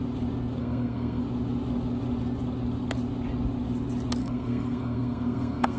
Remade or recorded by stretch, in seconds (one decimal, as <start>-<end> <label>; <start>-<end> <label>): 0.0-0.6 recorded; 0.6-1.2 remade; 1.2-4.2 recorded; 4.2-5.8 remade